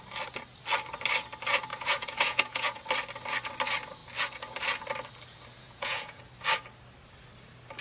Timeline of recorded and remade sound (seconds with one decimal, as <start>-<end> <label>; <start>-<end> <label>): 0.0-1.7 recorded; 1.7-2.8 remade; 2.8-5.6 recorded; 5.6-6.2 remade; 6.2-7.8 recorded

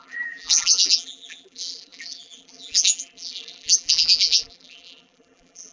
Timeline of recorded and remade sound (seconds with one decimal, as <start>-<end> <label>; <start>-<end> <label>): 0.0-5.7 remade

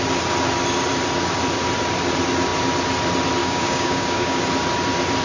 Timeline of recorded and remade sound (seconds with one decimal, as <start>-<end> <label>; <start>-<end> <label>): 0.0-3.4 recorded; 3.4-4.4 remade; 4.4-5.2 recorded

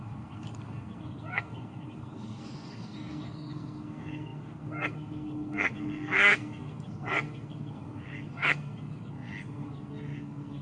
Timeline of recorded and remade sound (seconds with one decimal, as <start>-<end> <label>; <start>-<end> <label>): 0.0-10.6 remade